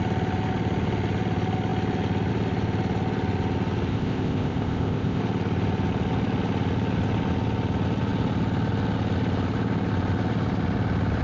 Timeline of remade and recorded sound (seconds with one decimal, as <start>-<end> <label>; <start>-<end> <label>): 0.0-3.9 recorded; 3.9-5.2 remade; 5.2-11.2 recorded